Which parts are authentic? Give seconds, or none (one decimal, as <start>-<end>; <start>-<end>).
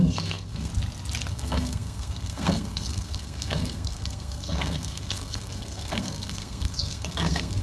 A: 0.7-1.3